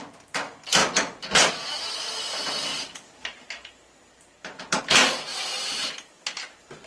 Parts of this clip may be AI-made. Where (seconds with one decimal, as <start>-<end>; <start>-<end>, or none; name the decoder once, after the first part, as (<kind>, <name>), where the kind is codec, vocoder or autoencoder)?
2.7-4.8 (vocoder, BigVGAN v2); 5.3-5.9